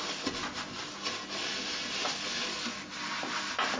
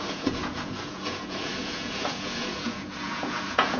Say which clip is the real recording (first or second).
first